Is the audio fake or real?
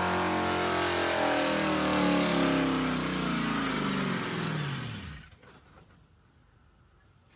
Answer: real